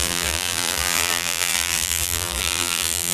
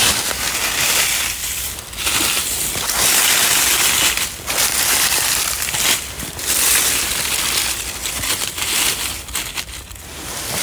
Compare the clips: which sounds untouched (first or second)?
second